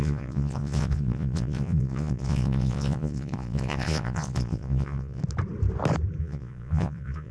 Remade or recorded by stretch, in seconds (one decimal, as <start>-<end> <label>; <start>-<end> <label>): 0.0-5.2 remade; 5.2-6.2 recorded; 6.2-7.3 remade